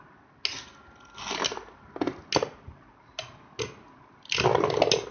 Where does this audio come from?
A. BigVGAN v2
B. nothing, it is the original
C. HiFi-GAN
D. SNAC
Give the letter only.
B